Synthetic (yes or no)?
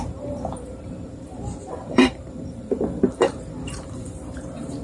yes